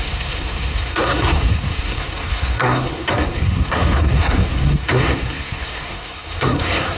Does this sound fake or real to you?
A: fake